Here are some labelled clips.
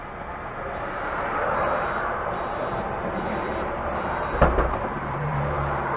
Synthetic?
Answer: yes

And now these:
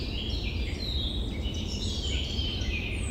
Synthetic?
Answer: yes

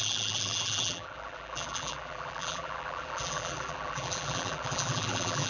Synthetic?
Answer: yes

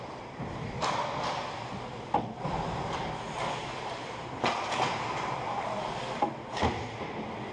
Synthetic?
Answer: yes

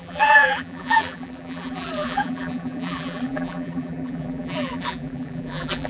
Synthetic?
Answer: yes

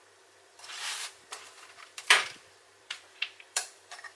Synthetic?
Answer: yes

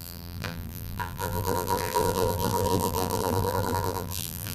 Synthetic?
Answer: yes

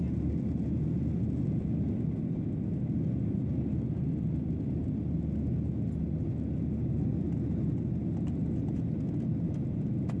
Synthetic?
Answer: no